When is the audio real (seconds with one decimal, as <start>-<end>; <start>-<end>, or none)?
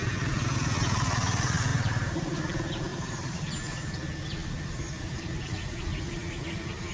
0.0-1.7; 2.4-2.9; 3.4-6.9